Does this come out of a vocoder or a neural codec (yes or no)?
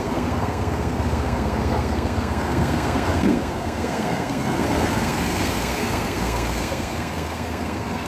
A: yes